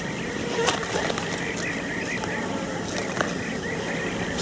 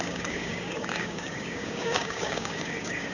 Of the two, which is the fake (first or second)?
second